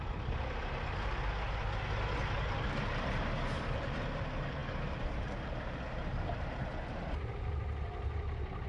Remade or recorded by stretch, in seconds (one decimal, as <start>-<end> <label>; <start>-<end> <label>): 0.0-8.7 recorded